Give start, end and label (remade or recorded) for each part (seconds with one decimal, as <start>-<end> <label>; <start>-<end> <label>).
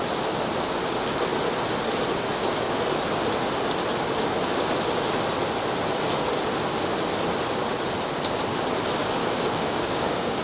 0.0-9.2 recorded; 9.2-10.4 remade